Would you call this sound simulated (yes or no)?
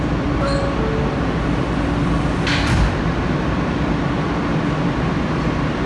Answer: no